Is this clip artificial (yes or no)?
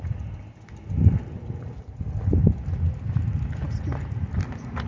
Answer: no